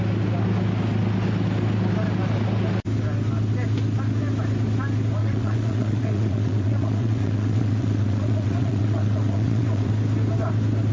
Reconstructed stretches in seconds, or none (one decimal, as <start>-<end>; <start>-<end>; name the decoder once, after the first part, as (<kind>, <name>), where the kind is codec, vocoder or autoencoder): 5.2-9.9 (vocoder, WaveNeXt)